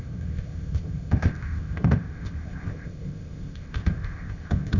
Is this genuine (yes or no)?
no